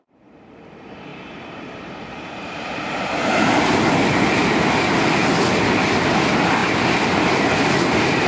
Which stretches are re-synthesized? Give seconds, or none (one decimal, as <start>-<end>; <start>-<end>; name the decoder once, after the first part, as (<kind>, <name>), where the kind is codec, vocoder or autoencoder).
1.1-3.2 (vocoder, BigVGAN v2)